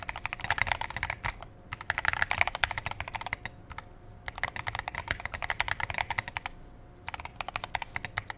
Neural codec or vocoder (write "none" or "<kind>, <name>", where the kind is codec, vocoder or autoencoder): none